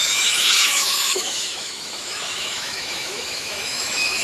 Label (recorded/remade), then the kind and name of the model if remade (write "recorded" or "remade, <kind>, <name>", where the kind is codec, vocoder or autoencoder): remade, autoencoder, DAC-VAE